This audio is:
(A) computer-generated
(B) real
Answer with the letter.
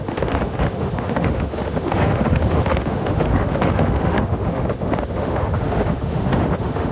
A